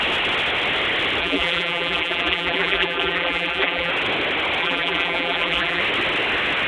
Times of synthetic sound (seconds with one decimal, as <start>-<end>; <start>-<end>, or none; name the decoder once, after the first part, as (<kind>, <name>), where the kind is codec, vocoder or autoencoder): 1.2-3.9 (vocoder, BigVGAN v2); 4.6-5.8